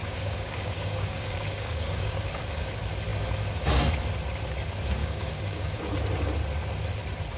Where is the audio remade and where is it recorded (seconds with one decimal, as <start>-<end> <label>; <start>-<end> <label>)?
0.0-2.3 remade; 2.3-5.0 recorded; 5.0-5.8 remade; 5.8-7.4 recorded